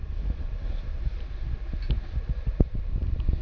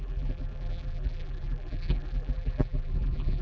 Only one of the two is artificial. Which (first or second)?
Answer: second